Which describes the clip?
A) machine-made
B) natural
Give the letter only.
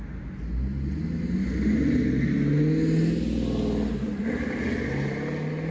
B